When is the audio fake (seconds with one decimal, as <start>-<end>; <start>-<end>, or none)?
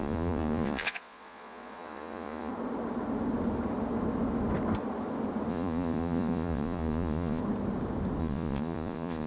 0.0-2.5; 5.5-7.4; 8.2-9.3